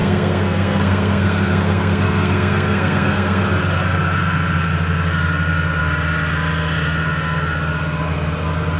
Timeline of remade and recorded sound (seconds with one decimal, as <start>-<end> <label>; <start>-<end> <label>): 0.0-3.4 remade; 3.4-8.8 recorded